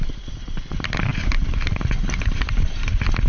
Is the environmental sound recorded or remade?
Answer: recorded